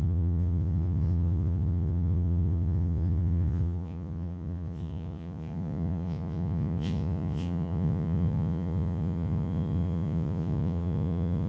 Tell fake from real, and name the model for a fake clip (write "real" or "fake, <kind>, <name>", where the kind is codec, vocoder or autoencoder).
fake, vocoder, Vocos